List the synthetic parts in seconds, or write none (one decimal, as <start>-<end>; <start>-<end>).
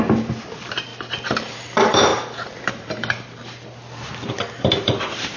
0.0-0.9; 1.5-3.4; 4.6-5.4